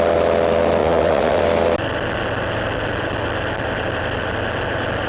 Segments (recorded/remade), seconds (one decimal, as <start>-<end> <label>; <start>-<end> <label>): 0.0-0.8 recorded; 0.8-1.4 remade; 1.4-5.1 recorded